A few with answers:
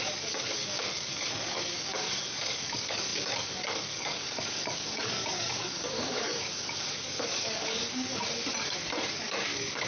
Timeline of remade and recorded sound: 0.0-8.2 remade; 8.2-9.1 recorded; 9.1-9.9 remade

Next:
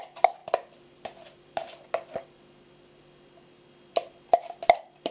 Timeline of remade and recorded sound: 0.0-5.1 recorded

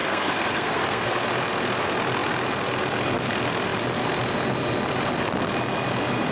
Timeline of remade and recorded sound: 0.0-1.2 remade; 1.2-6.3 recorded

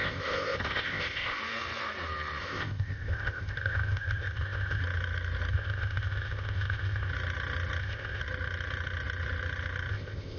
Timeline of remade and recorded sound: 0.0-1.4 remade; 1.4-2.4 recorded; 2.4-4.8 remade; 4.8-5.5 recorded; 5.5-7.1 remade; 7.1-7.8 recorded; 7.8-8.2 remade; 8.2-9.9 recorded; 9.9-10.4 remade

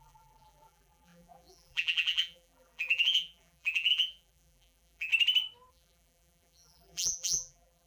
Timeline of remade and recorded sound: 0.0-5.1 remade; 5.1-5.7 recorded; 5.7-7.9 remade

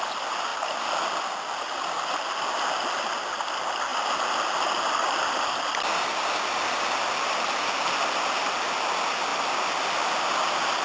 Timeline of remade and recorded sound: 0.0-10.8 recorded

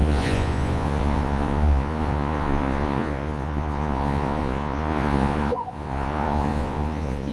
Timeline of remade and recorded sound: 0.0-7.3 remade

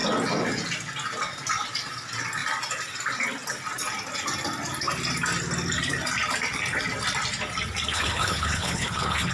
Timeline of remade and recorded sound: 0.0-7.9 recorded; 7.9-9.3 remade